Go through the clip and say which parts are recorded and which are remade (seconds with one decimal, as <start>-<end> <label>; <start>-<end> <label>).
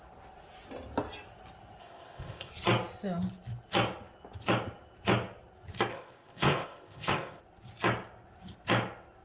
0.0-1.8 recorded; 1.8-2.5 remade; 2.5-5.9 recorded; 5.9-7.4 remade; 7.4-9.2 recorded